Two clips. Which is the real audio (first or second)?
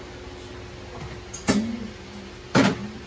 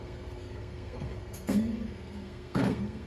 first